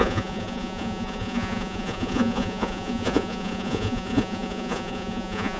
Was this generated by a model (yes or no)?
yes